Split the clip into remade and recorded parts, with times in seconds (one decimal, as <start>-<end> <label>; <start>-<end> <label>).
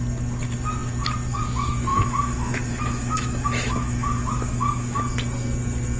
0.0-1.9 recorded; 1.9-5.0 remade; 5.0-6.0 recorded